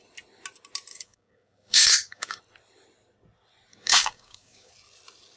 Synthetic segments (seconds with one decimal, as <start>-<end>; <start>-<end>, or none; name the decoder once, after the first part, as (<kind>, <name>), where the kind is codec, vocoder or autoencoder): 0.9-2.4 (codec, DAC); 3.7-4.7